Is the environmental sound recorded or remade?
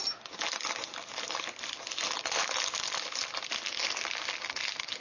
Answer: recorded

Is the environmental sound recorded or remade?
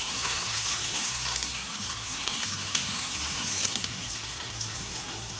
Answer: remade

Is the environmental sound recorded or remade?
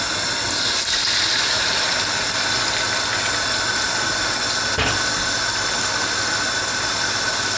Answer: recorded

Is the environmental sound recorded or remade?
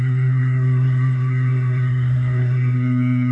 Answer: remade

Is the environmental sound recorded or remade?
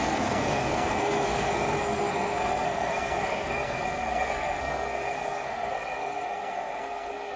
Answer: remade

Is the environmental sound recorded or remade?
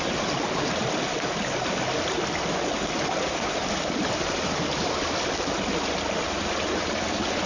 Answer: recorded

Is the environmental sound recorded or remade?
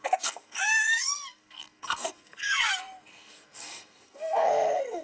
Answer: remade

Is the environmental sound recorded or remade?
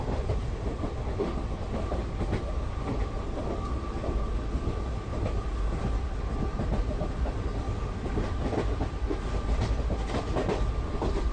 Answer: recorded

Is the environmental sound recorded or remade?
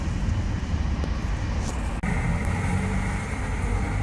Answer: recorded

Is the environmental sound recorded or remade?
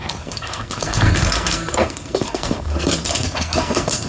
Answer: remade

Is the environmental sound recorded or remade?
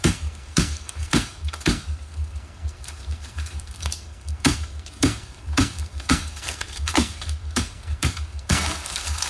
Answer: remade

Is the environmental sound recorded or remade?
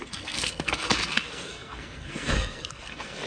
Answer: remade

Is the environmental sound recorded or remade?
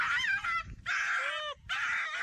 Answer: recorded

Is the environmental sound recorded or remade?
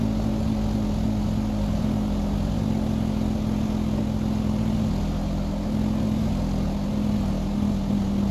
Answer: recorded